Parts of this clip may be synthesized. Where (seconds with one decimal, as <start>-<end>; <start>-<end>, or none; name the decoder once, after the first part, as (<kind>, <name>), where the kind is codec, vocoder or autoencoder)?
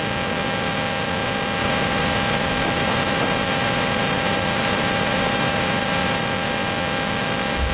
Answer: 1.6-6.2 (vocoder, BigVGAN v2)